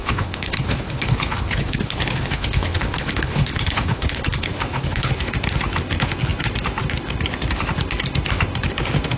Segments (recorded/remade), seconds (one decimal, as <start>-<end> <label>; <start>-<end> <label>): 0.0-5.1 remade; 5.1-9.2 recorded

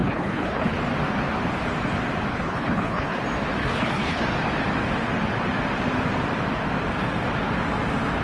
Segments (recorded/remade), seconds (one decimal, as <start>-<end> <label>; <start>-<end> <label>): 0.0-0.8 remade; 0.8-2.3 recorded; 2.3-3.2 remade; 3.2-3.6 recorded; 3.6-4.2 remade; 4.2-8.2 recorded